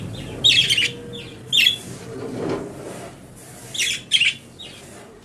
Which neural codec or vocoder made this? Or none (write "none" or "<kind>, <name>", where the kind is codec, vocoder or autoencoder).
none